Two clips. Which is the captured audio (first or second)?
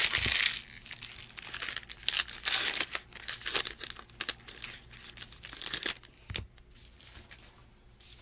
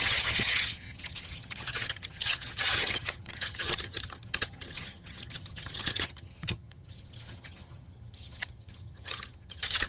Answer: first